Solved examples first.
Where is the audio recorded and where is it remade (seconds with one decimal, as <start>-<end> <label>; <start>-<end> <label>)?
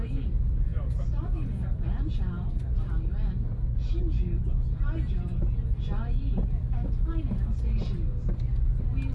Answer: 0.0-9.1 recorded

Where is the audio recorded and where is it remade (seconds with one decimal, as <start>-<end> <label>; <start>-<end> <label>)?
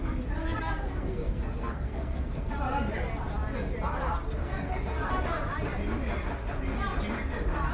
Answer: 0.0-0.4 recorded; 0.4-2.5 remade; 2.5-4.4 recorded; 4.4-5.1 remade; 5.1-7.7 recorded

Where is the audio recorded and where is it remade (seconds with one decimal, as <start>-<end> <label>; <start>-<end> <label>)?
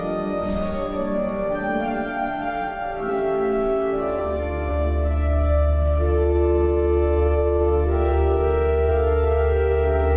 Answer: 0.0-2.1 recorded; 2.1-3.1 remade; 3.1-4.2 recorded; 4.2-4.7 remade; 4.7-10.2 recorded